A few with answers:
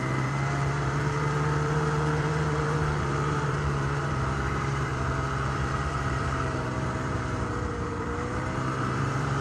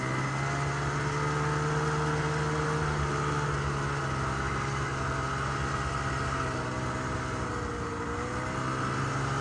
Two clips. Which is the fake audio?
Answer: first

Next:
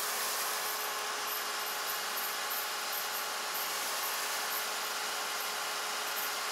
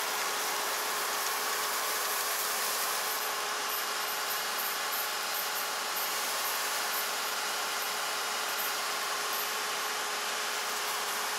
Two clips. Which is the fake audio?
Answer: second